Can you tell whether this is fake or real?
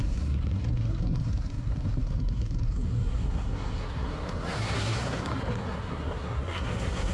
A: fake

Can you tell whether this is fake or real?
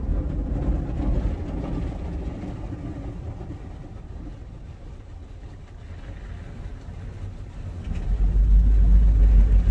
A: real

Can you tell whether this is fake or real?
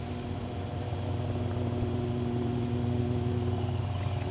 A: real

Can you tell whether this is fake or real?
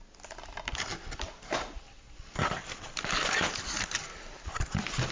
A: real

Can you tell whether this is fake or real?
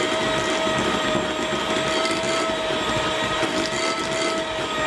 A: real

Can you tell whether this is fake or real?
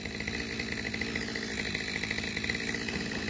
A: real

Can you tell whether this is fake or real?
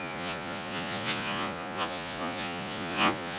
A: fake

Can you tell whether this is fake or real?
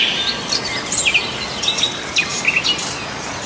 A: real